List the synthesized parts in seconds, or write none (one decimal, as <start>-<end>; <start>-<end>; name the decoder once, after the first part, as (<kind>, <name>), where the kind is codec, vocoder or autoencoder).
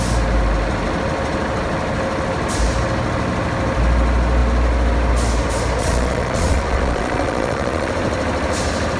5.8-7.9 (vocoder, Vocos)